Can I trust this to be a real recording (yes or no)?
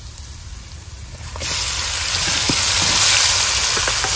yes